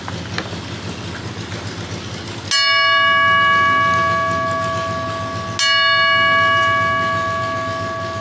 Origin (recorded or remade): recorded